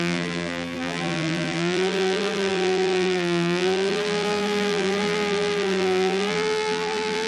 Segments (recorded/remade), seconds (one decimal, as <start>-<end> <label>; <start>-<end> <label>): 0.0-7.3 remade